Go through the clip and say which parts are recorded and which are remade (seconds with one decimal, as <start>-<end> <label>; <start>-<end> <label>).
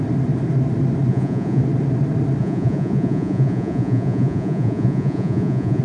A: 0.0-1.1 recorded; 1.1-1.6 remade; 1.6-2.4 recorded; 2.4-5.8 remade